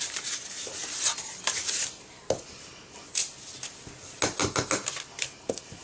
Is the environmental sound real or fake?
real